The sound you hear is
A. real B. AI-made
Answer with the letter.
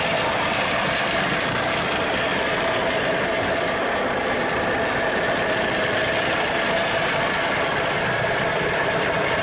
A